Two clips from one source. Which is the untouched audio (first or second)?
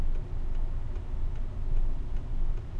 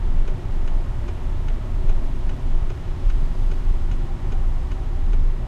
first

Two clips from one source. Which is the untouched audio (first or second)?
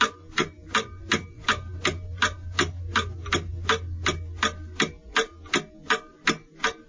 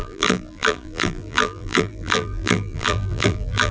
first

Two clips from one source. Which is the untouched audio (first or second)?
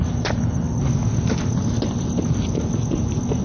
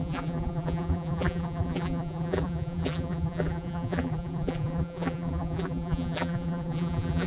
first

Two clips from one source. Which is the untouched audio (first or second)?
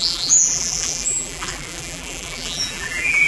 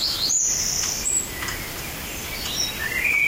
second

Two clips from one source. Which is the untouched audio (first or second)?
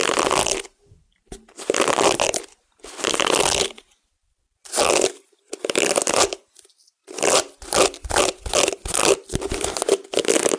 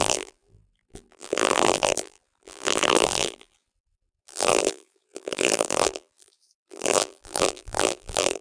first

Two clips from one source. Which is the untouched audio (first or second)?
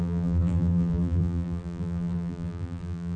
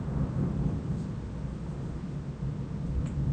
second